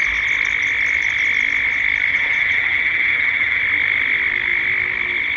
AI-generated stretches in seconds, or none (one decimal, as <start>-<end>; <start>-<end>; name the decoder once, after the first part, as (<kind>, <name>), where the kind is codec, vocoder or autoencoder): 2.1-3.6 (vocoder, HiFi-GAN)